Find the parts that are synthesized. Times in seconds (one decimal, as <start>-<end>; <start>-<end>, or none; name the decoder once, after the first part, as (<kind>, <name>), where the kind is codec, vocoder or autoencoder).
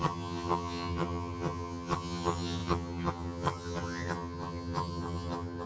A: 0.0-5.7 (vocoder, HiFi-GAN)